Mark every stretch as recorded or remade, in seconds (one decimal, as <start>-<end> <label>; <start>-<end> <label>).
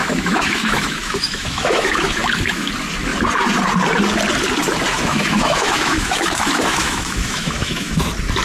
0.0-2.7 remade; 2.7-4.9 recorded; 4.9-8.0 remade; 8.0-8.4 recorded